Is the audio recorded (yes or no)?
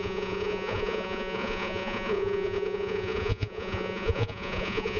no